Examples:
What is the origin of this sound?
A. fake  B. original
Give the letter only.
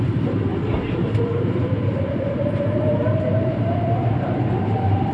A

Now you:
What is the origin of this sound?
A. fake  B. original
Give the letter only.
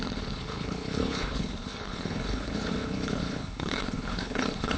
A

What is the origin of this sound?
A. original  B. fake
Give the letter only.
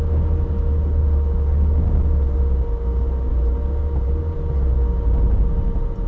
A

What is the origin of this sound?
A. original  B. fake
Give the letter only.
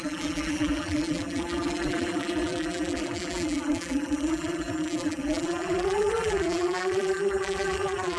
B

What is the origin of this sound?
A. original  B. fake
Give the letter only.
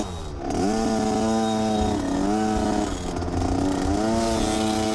A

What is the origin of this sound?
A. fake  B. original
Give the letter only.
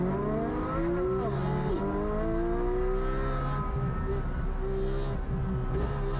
B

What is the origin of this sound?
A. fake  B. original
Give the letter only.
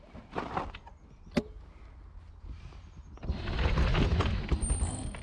B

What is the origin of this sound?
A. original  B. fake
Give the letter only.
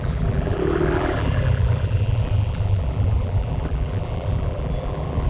B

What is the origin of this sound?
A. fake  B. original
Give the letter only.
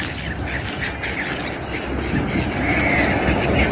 B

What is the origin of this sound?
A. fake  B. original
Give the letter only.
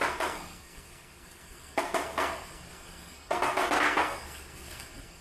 A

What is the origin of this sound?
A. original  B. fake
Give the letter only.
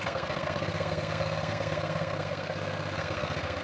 B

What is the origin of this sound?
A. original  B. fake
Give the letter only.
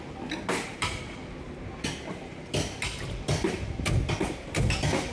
A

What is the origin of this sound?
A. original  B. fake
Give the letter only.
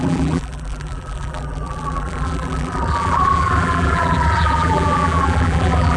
B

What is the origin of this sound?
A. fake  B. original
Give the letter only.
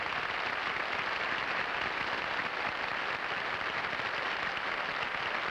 B